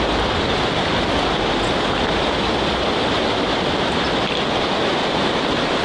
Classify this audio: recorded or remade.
recorded